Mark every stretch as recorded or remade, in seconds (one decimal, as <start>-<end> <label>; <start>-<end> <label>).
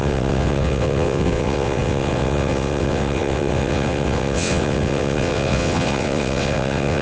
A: 0.0-7.0 remade